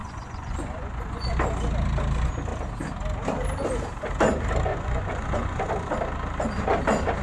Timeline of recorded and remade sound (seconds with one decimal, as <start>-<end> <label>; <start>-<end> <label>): 0.0-1.3 remade; 1.3-4.7 recorded; 4.7-5.7 remade; 5.7-7.2 recorded

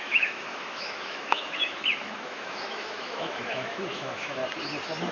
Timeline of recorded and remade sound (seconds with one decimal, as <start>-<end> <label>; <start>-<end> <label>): 0.0-4.4 remade; 4.4-5.1 recorded

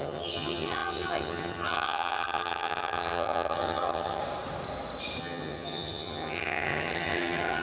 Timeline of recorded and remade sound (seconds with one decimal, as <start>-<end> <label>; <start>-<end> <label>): 0.0-4.2 remade; 4.2-5.2 recorded; 5.2-7.6 remade

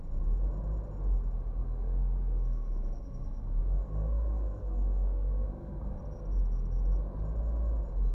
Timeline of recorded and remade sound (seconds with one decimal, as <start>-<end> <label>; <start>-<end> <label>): 0.0-1.6 recorded; 1.6-6.0 remade; 6.0-8.1 recorded

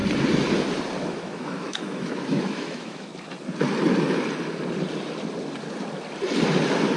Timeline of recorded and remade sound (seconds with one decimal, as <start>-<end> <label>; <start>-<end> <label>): 0.0-1.0 recorded; 1.0-3.1 remade; 3.1-7.0 recorded

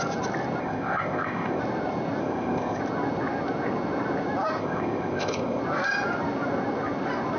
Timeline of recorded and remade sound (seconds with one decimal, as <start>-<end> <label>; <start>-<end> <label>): 0.0-0.6 recorded; 0.6-1.6 remade; 1.6-2.2 recorded; 2.2-2.8 remade; 2.8-4.6 recorded; 4.6-5.6 remade; 5.6-7.4 recorded

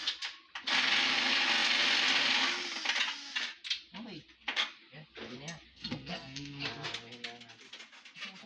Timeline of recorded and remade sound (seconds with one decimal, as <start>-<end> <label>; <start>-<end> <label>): 0.0-5.7 recorded; 5.7-6.6 remade; 6.6-8.5 recorded